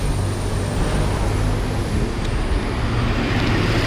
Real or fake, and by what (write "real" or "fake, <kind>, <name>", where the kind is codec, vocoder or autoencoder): real